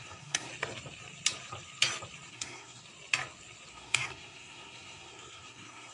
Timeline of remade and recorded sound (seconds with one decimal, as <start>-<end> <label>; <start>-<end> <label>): 0.0-0.5 remade; 0.5-2.3 recorded; 2.3-2.8 remade; 2.8-3.7 recorded; 3.7-5.9 remade